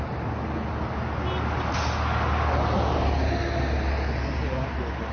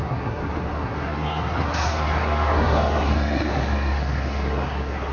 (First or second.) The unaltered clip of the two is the first